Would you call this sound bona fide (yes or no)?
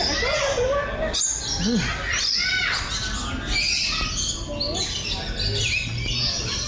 yes